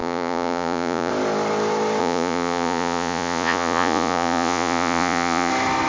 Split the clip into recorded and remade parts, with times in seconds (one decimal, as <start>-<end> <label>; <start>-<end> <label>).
0.0-1.1 remade; 1.1-2.0 recorded; 2.0-5.5 remade; 5.5-5.9 recorded